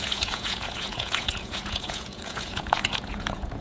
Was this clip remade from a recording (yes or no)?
yes